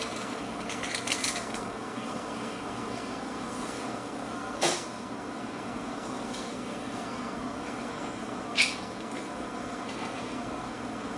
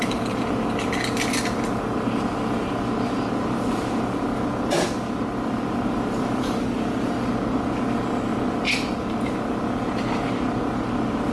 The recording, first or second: second